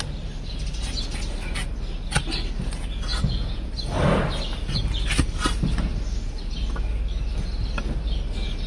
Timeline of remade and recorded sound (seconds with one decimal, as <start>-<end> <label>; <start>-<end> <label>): 0.0-3.1 recorded; 3.1-3.7 remade; 3.7-8.7 recorded